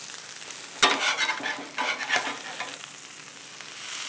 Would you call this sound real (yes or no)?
yes